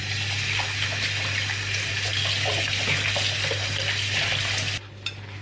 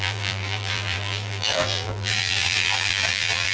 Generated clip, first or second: second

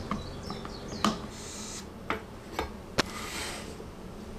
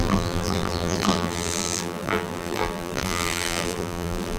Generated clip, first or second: second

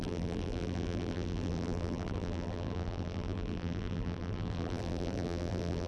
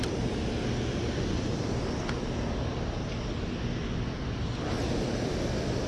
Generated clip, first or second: first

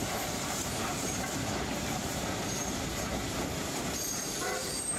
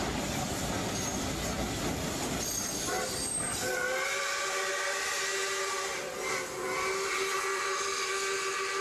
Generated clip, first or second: first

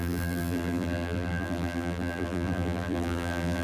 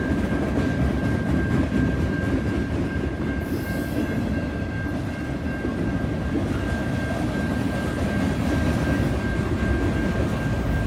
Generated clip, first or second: first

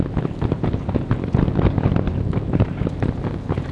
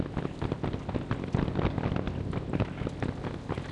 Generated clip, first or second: first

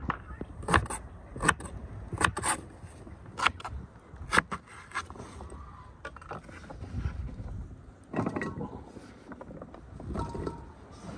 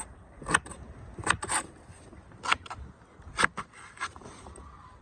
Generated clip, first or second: second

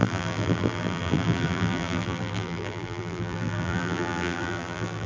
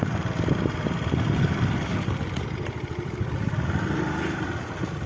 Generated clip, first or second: first